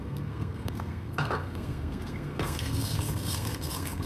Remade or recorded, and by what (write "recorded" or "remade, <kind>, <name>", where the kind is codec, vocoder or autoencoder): remade, codec, SNAC